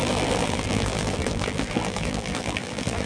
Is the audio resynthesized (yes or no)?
yes